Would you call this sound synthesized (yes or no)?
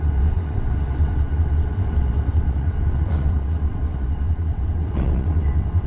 yes